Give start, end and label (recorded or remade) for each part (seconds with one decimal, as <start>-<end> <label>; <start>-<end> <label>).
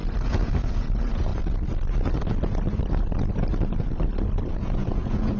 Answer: 0.0-1.3 remade; 1.3-4.5 recorded; 4.5-5.4 remade